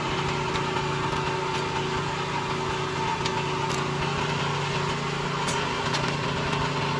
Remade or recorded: recorded